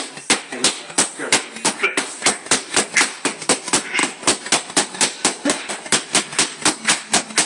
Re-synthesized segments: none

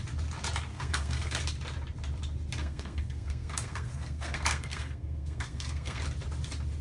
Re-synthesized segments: 0.7-1.4 (codec, SNAC); 2.6-6.0